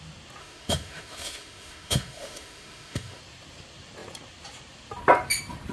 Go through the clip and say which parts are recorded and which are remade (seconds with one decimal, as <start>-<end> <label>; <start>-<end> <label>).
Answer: 0.0-0.4 recorded; 0.4-3.2 remade; 3.2-5.7 recorded